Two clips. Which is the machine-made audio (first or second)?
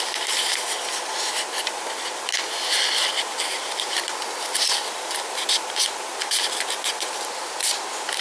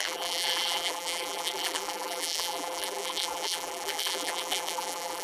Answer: second